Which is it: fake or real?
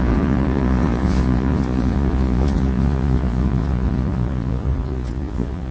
fake